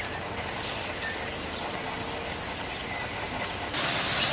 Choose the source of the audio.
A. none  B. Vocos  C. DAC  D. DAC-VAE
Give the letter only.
A